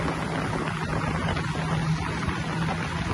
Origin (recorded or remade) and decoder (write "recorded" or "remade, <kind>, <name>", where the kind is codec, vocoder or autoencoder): recorded